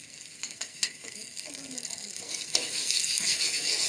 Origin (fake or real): fake